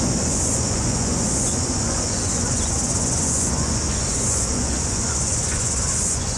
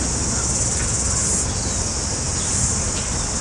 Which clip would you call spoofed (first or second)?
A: first